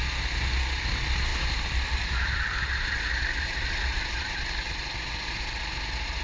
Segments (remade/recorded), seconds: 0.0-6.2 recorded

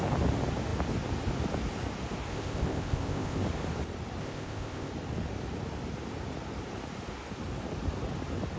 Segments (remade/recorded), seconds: 0.0-2.3 recorded; 2.3-3.4 remade; 3.4-4.2 recorded; 4.2-4.9 remade; 4.9-8.6 recorded

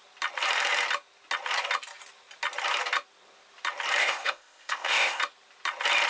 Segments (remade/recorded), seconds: 0.0-4.0 recorded; 4.0-5.2 remade; 5.2-6.1 recorded

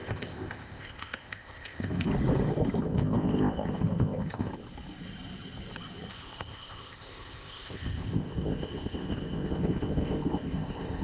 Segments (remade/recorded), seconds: 0.0-2.1 remade; 2.1-2.8 recorded; 2.8-4.5 remade; 4.5-6.1 recorded; 6.1-11.0 remade

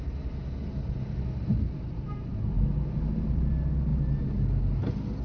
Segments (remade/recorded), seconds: 0.0-5.2 recorded